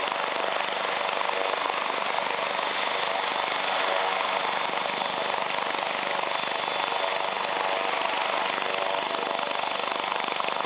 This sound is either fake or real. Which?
real